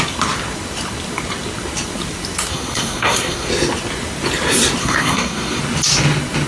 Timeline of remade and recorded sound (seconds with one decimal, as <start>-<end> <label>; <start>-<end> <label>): 0.0-2.5 recorded; 2.5-3.5 remade; 3.5-4.8 recorded; 4.8-5.6 remade; 5.6-6.5 recorded